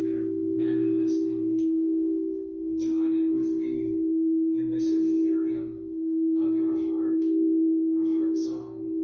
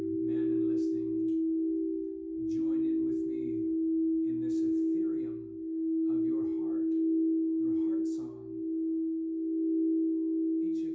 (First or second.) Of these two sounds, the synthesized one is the first